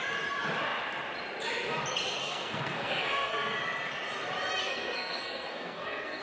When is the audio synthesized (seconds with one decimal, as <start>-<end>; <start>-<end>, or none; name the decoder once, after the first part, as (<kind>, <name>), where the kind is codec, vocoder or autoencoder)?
2.2-3.6 (codec, SNAC); 4.6-6.2